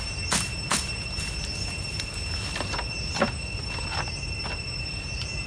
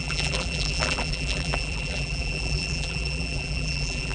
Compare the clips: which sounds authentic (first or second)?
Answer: first